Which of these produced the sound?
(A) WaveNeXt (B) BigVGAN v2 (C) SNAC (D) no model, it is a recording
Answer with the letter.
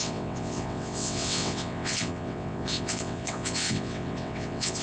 A